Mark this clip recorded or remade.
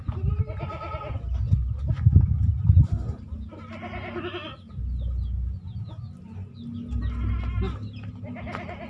recorded